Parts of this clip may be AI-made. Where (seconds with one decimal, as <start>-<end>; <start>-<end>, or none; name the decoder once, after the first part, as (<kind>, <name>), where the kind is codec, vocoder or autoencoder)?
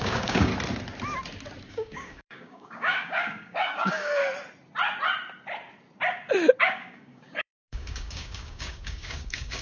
0.0-0.5 (codec, DAC); 1.7-4.2; 6.6-9.6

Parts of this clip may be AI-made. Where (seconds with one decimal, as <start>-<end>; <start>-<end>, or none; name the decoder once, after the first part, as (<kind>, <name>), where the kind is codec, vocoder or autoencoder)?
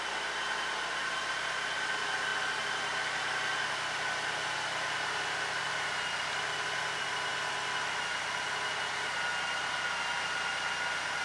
none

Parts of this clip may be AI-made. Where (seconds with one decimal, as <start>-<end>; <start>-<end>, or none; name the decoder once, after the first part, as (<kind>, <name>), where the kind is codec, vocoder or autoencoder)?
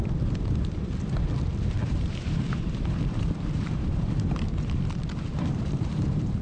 1.8-4.5 (vocoder, BigVGAN v2); 5.3-6.4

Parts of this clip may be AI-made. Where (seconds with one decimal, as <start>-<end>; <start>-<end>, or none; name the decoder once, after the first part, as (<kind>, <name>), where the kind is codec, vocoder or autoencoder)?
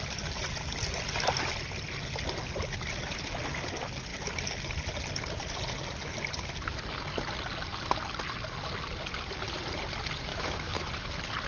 10.3-10.9 (autoencoder, DAC-VAE)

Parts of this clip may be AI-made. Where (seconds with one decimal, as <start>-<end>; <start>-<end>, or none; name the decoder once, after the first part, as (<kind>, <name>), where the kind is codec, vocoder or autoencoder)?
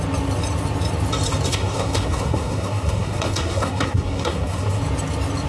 1.5-4.8 (codec, SNAC)